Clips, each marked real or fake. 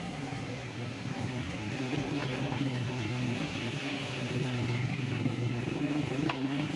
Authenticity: fake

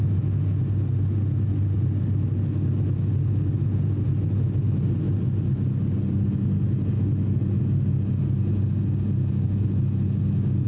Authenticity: real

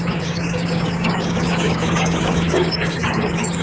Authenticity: fake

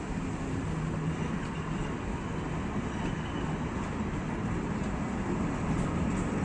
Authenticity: real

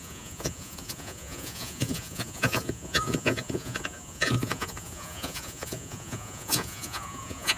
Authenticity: fake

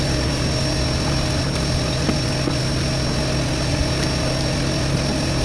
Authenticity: real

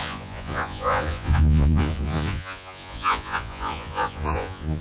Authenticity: fake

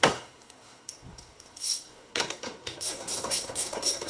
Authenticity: fake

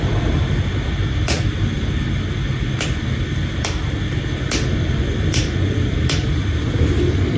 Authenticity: real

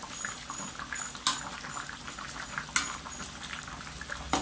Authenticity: real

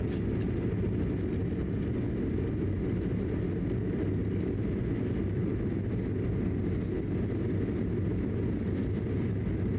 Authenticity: real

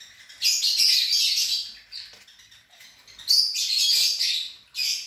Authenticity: real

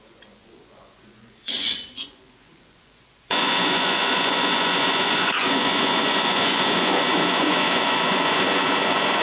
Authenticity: fake